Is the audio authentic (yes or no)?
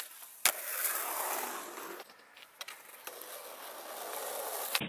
yes